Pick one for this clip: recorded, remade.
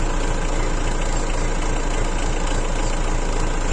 recorded